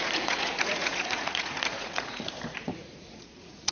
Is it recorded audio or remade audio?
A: remade